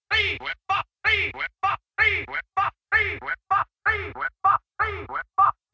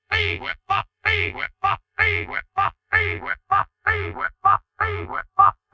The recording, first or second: first